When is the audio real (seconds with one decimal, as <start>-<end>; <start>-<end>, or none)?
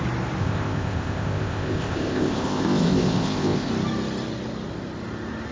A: 0.0-0.4; 3.7-5.5